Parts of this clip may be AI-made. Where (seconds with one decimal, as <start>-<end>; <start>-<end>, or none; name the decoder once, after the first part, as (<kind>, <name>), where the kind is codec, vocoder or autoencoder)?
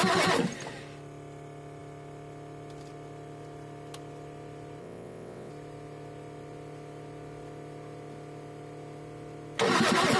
4.8-5.5 (vocoder, WaveNeXt)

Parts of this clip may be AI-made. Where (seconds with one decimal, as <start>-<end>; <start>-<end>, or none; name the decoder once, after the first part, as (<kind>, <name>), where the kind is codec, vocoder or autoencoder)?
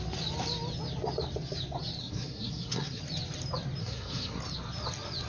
2.0-3.0 (codec, SNAC); 3.8-4.4